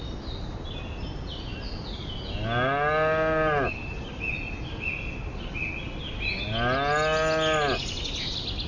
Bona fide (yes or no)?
yes